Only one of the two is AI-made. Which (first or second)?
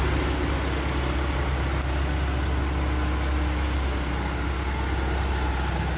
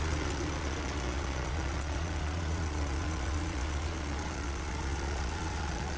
second